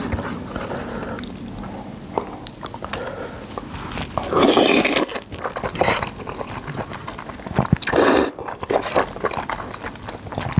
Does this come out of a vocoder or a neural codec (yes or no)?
no